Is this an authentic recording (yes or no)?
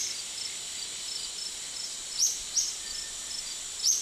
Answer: yes